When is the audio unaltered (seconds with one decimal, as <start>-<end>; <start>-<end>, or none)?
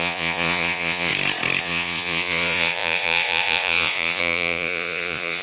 1.1-1.6